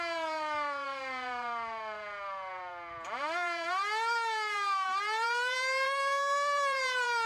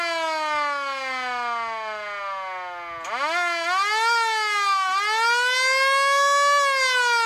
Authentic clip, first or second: second